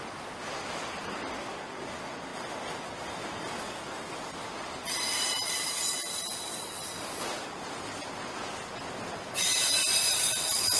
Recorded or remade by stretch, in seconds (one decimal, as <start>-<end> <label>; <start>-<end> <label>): 0.0-10.8 recorded